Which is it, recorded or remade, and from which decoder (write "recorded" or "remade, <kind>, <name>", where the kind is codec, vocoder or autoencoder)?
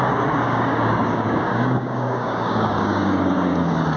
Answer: remade, codec, DAC